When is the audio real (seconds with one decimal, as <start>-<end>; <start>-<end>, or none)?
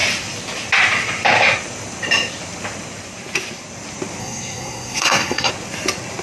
0.0-4.2; 5.5-6.2